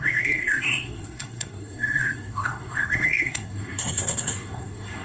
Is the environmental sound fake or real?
fake